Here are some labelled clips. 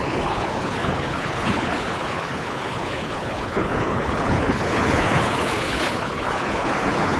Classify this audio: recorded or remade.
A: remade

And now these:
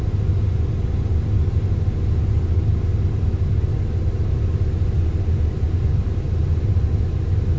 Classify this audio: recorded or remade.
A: recorded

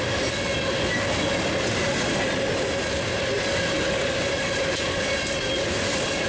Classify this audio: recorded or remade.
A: recorded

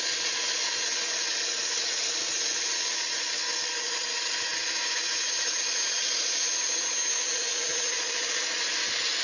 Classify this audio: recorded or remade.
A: recorded